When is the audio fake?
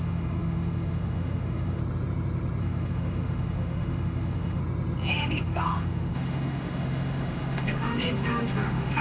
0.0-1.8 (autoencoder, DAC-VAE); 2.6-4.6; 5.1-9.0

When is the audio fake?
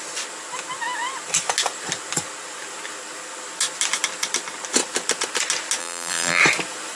5.8-6.4 (vocoder, BigVGAN v2)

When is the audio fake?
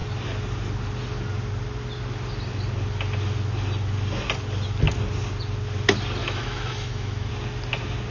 6.2-7.3 (autoencoder, DAC-VAE)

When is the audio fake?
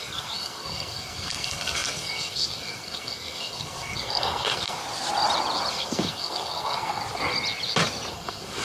0.0-4.8 (codec, SNAC); 5.7-7.0; 8.1-8.6